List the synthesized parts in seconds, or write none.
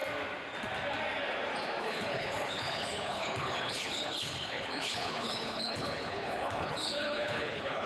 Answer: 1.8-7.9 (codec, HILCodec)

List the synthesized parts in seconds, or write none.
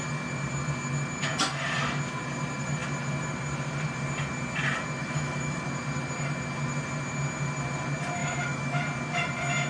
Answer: 5.0-5.6 (autoencoder, DAC-VAE); 8.2-8.8